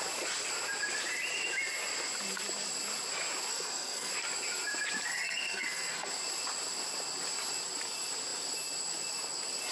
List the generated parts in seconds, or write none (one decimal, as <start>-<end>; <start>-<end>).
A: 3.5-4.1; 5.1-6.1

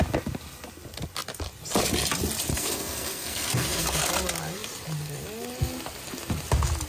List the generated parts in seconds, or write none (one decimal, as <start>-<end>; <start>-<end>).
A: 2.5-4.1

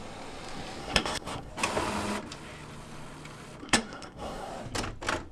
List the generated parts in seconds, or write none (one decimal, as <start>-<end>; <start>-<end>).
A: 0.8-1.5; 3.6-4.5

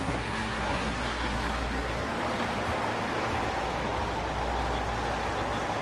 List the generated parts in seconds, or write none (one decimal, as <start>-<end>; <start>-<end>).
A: 0.0-2.1

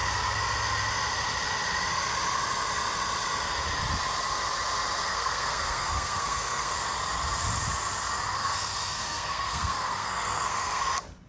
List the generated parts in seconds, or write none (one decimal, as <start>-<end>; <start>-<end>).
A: 5.1-6.7; 8.4-10.8